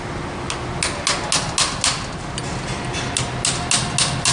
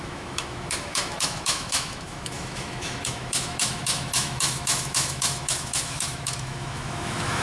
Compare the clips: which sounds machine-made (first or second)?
second